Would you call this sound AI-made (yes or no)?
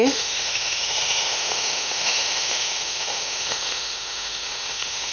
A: yes